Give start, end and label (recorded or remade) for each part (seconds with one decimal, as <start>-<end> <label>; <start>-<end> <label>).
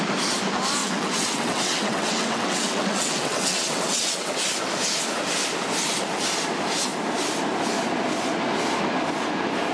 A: 0.0-0.8 recorded; 0.8-4.4 remade; 4.4-9.7 recorded